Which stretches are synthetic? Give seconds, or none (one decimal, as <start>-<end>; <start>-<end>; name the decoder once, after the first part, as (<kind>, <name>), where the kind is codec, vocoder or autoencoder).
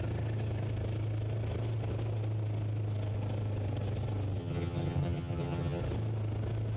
4.4-5.8 (vocoder, HiFi-GAN)